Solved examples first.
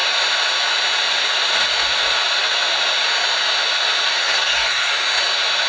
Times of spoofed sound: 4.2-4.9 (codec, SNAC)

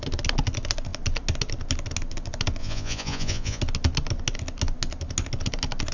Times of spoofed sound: 2.6-3.6 (vocoder, Vocos)

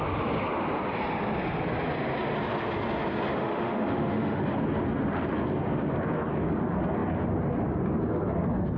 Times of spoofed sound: 3.4-4.4 (autoencoder, DAC-VAE)

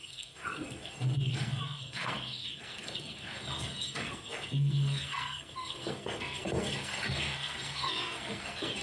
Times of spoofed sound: 0.0-8.8 (codec, SNAC)

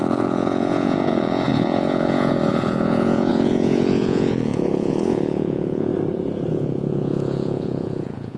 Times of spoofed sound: 0.0-5.9 (vocoder, Vocos); 6.5-8.4